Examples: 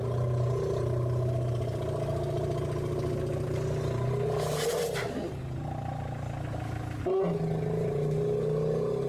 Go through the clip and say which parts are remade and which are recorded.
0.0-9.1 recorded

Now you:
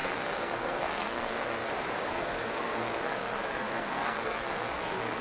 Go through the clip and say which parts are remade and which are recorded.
0.0-1.7 remade; 1.7-2.1 recorded; 2.1-5.2 remade

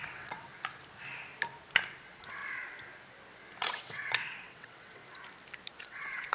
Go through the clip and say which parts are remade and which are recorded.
0.0-0.5 remade; 0.5-2.0 recorded; 2.0-2.4 remade; 2.4-3.6 recorded; 3.6-5.0 remade; 5.0-5.8 recorded; 5.8-6.3 remade